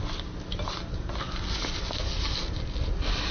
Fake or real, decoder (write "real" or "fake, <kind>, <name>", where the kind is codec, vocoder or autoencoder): real